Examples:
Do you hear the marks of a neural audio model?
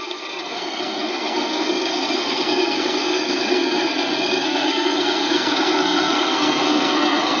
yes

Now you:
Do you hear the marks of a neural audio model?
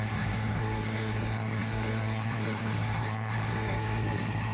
yes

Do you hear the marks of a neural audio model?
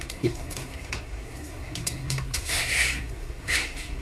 yes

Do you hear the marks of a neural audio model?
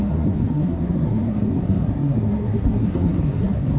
yes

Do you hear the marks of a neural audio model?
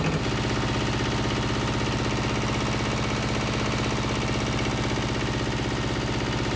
no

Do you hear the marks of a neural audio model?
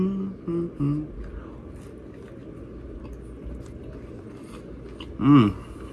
no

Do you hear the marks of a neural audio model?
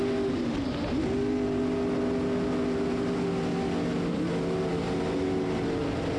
no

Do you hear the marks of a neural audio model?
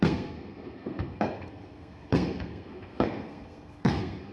yes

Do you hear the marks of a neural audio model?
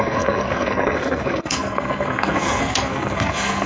yes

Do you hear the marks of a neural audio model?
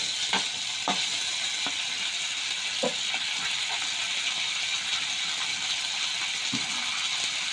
no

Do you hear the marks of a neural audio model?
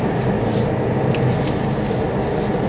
no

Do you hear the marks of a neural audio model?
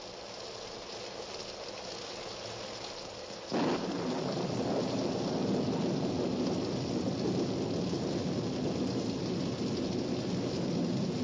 no